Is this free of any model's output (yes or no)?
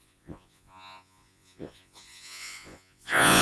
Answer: no